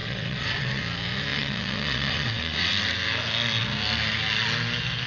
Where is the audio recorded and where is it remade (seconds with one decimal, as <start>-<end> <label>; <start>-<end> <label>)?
0.0-0.8 remade; 0.8-1.3 recorded; 1.3-2.7 remade; 2.7-5.1 recorded